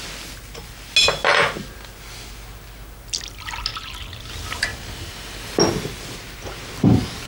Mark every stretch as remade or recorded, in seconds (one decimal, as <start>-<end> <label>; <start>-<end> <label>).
0.0-3.7 recorded; 3.7-4.3 remade; 4.3-7.3 recorded